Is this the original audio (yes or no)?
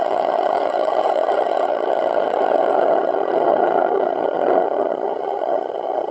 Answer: no